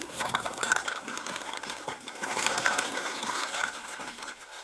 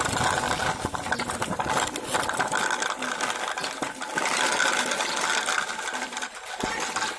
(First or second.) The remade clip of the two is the first